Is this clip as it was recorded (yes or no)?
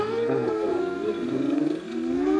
no